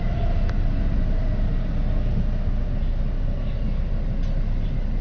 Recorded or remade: recorded